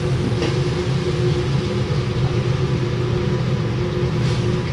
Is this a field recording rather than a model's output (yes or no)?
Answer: yes